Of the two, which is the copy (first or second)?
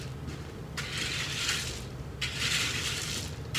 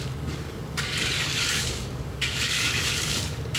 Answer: second